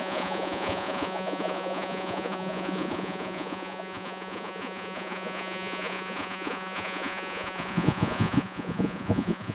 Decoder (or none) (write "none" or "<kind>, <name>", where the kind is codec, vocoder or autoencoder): vocoder, Vocos